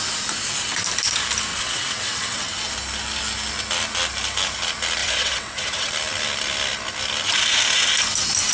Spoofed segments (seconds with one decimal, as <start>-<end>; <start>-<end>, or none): 1.5-2.7; 5.0-5.9